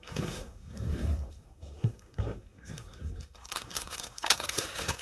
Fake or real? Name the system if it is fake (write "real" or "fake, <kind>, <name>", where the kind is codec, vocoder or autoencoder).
fake, codec, SNAC